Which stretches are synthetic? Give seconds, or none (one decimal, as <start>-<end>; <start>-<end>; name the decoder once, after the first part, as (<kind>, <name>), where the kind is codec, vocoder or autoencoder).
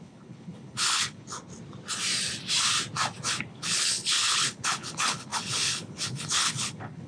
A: 0.0-1.5 (codec, HILCodec); 3.4-7.1